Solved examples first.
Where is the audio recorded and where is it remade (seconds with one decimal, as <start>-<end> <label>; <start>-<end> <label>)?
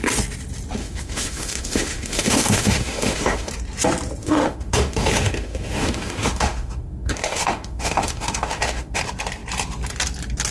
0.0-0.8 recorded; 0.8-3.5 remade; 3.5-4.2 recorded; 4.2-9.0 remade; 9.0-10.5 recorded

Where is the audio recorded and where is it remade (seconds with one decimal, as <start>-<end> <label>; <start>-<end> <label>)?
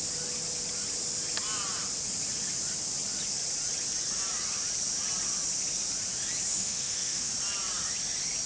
0.0-6.5 recorded; 6.5-7.3 remade; 7.3-8.5 recorded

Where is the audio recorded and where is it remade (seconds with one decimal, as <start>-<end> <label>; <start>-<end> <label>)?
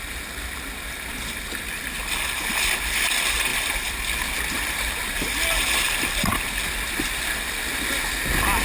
0.0-8.6 recorded